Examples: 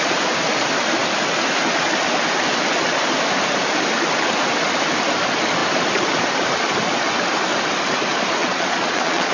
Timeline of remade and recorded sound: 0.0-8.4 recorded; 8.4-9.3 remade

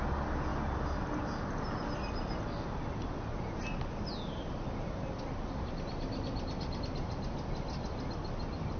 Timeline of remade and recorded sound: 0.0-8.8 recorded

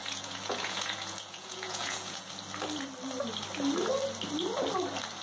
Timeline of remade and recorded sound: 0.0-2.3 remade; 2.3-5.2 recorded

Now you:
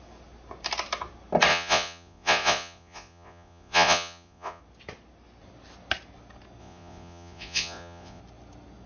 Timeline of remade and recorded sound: 0.0-1.5 recorded; 1.5-4.6 remade; 4.6-6.6 recorded; 6.6-8.2 remade; 8.2-8.9 recorded